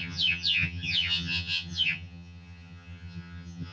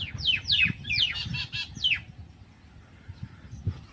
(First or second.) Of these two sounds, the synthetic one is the first